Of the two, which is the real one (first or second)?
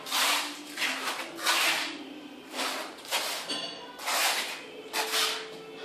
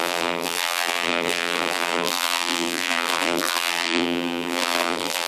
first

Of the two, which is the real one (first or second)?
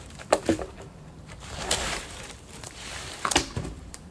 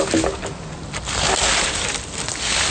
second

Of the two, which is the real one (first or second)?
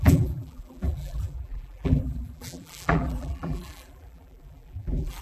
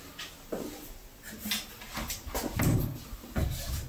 second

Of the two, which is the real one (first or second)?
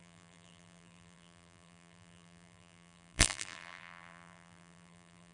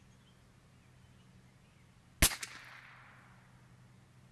second